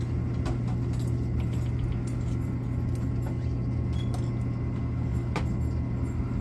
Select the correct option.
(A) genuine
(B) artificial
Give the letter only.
A